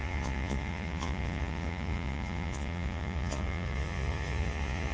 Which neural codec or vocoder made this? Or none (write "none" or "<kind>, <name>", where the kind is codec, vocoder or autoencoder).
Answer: vocoder, Vocos